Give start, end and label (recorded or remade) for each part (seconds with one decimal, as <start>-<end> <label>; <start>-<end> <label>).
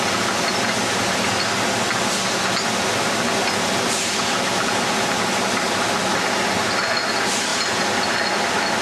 0.0-8.8 recorded